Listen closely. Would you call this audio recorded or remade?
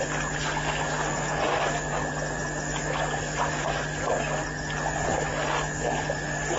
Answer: recorded